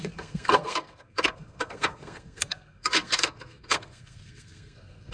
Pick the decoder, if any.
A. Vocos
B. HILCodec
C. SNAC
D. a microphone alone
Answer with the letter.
C